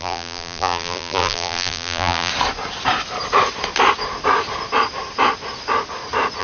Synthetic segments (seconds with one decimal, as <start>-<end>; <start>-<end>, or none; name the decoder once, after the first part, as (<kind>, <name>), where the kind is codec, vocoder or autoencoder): 0.0-2.3 (vocoder, BigVGAN v2)